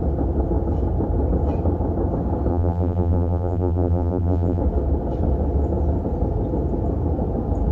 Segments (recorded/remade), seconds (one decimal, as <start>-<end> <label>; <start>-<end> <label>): 0.0-2.5 recorded; 2.5-4.6 remade; 4.6-7.7 recorded